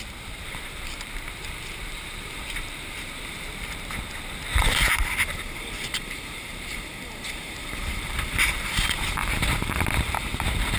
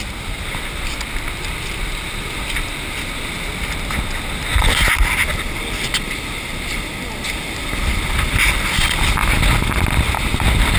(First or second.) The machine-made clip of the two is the first